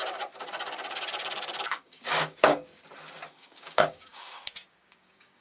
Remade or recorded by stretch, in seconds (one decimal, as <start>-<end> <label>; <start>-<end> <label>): 0.0-1.6 recorded; 1.6-2.7 remade; 2.7-3.3 recorded; 3.3-5.4 remade